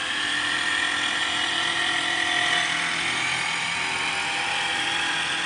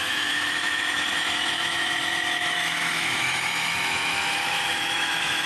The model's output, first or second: second